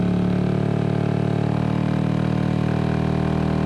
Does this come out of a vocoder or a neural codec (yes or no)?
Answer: no